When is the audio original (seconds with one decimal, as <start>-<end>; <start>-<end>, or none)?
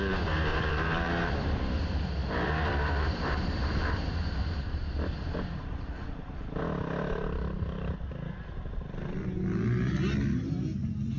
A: 0.0-0.5; 1.6-2.2; 6.6-7.2; 8.0-11.2